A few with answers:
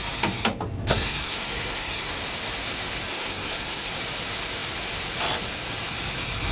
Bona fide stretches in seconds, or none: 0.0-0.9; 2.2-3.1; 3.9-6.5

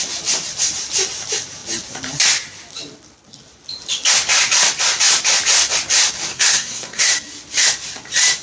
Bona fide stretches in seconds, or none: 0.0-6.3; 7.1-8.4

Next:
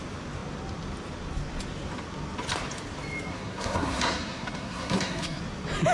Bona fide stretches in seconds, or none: 0.0-3.3; 5.4-5.9

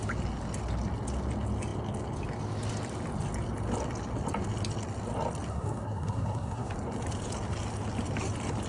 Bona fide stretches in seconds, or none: 0.0-5.5; 6.7-8.7

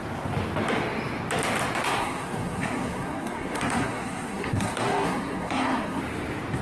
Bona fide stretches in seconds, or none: 0.0-2.0; 6.0-6.6

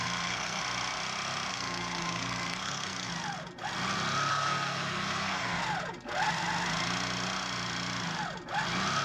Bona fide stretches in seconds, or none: 0.6-1.5; 3.1-4.3; 5.6-9.0